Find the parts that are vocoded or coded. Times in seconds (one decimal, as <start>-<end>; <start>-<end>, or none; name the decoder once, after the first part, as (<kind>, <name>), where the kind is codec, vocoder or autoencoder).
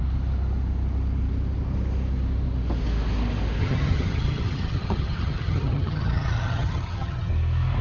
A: 3.6-7.3 (vocoder, HiFi-GAN)